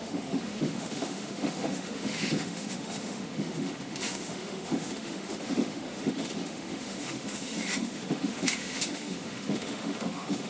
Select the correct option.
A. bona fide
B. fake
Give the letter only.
B